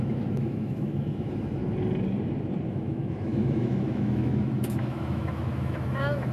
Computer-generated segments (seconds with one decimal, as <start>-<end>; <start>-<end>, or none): 0.0-1.6; 2.7-6.3

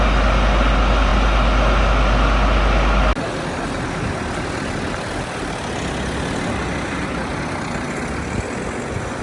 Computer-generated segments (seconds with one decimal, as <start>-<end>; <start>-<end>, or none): none

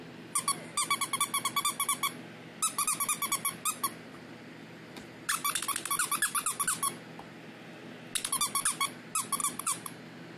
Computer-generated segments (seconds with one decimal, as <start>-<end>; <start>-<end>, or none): 9.4-10.0